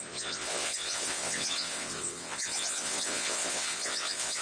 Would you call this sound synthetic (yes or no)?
yes